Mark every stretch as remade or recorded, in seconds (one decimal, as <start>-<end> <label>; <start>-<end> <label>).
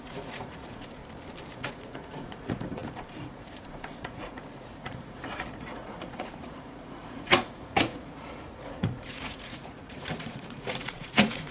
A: 0.0-1.0 remade; 1.0-1.5 recorded; 1.5-11.5 remade